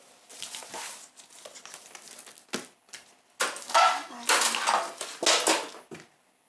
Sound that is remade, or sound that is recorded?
recorded